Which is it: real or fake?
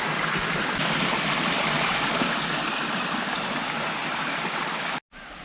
real